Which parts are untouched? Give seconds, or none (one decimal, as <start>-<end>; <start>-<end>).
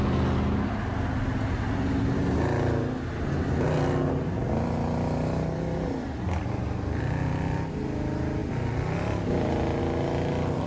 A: 0.0-10.7